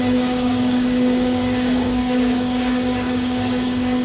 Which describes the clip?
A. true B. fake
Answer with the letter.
B